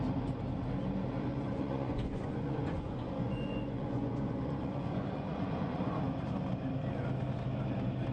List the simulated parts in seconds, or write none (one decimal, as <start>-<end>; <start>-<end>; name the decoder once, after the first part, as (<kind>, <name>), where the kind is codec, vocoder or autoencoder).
1.3-6.0 (vocoder, Vocos)